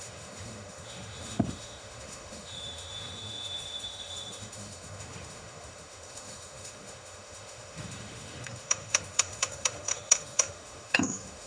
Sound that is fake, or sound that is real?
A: fake